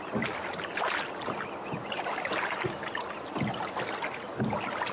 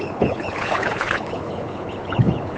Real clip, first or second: first